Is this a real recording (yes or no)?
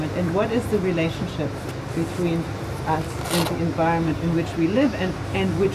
yes